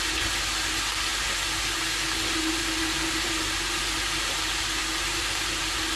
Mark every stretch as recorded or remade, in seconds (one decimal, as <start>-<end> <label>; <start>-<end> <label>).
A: 0.0-6.0 recorded